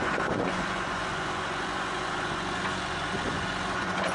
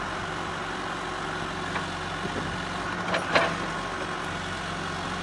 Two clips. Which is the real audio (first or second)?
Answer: second